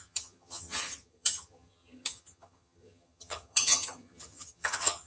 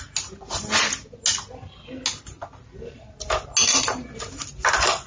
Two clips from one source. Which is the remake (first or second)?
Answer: first